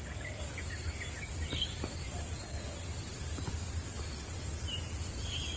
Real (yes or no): yes